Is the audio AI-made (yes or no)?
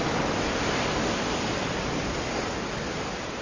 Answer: no